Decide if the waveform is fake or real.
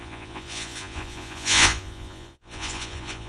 fake